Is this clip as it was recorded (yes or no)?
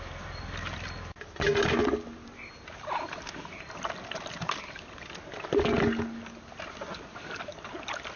yes